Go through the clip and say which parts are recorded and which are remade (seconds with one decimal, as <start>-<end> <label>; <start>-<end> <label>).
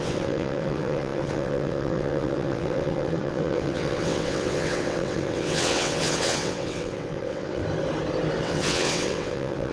0.0-7.6 remade; 7.6-8.4 recorded; 8.4-9.7 remade